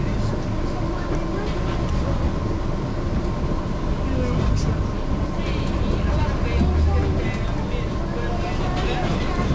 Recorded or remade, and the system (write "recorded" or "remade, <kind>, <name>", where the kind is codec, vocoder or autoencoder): recorded